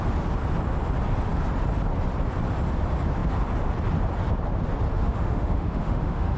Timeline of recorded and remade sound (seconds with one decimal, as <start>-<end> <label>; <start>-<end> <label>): 0.0-4.9 recorded; 4.9-6.4 remade